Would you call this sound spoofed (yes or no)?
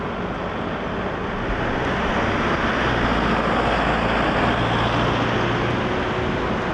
no